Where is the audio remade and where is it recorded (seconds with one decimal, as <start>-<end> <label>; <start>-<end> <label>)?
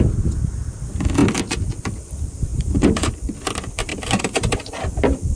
0.0-2.5 recorded; 2.5-3.1 remade; 3.1-3.9 recorded; 3.9-4.7 remade; 4.7-5.4 recorded